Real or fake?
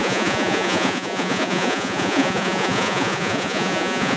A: fake